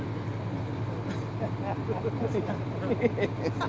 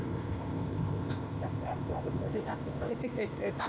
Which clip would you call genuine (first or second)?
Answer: first